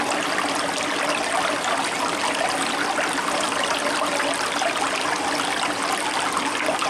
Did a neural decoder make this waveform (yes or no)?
no